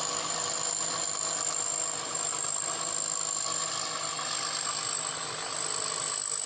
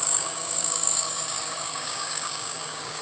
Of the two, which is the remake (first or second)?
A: second